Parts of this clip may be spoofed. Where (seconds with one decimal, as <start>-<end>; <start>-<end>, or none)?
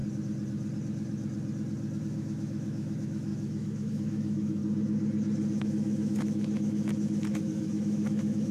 2.0-4.6; 5.5-8.5